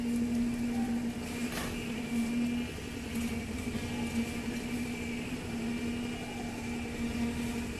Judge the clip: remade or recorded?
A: recorded